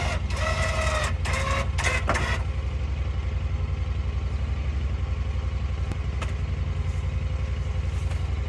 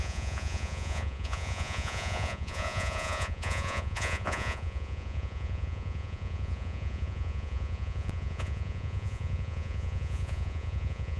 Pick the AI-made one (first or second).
second